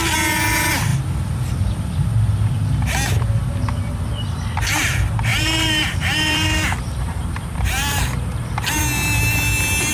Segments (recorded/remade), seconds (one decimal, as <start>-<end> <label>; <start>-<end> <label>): 0.0-5.3 recorded; 5.3-8.8 remade; 8.8-9.9 recorded